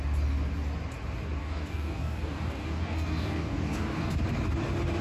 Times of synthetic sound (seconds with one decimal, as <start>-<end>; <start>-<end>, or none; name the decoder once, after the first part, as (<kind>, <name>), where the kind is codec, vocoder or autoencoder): 1.4-4.2 (codec, DAC)